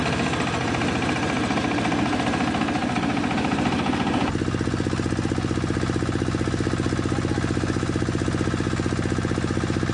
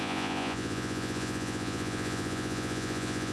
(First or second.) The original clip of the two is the first